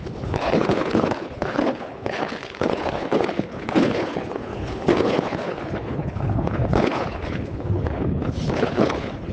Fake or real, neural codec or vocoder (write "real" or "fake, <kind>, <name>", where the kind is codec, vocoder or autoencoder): fake, codec, HILCodec